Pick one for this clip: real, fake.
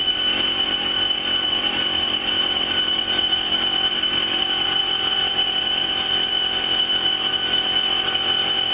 fake